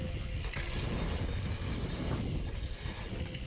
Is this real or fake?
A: real